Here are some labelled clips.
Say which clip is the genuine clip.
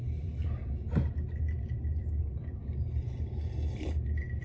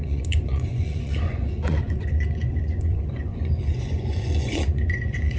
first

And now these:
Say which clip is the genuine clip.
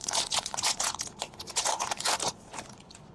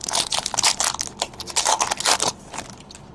second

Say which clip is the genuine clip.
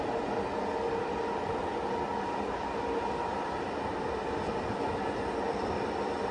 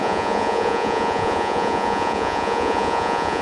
first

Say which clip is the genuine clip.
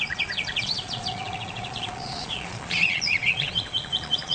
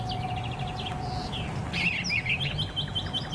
second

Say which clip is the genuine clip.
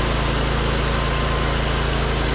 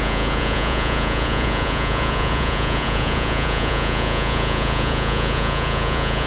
first